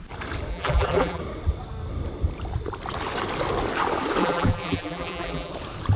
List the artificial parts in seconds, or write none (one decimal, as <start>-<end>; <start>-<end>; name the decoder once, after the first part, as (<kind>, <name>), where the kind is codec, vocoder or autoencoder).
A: 0.5-1.2 (vocoder, BigVGAN v2); 4.2-5.5